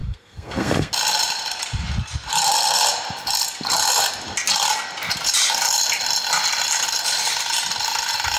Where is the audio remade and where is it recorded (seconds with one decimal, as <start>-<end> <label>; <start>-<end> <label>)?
0.0-0.9 remade; 0.9-8.4 recorded